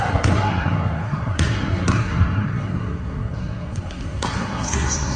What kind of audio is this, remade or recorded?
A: remade